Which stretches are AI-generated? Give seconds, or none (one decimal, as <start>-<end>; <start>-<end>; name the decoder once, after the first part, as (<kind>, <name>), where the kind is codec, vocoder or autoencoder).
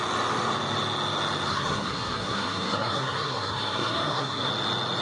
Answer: 1.5-4.5 (codec, SNAC)